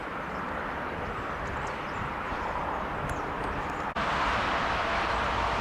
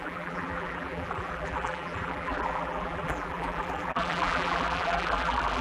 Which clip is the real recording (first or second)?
first